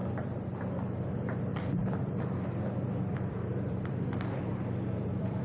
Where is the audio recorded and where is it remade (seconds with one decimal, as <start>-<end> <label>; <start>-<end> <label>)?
0.0-1.5 remade; 1.5-3.1 recorded; 3.1-5.4 remade